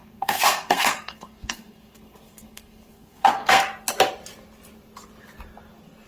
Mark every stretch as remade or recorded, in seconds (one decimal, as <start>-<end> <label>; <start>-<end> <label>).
0.0-3.6 remade; 3.6-6.1 recorded